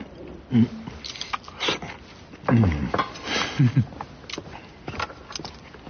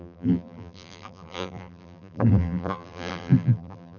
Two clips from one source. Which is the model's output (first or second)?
second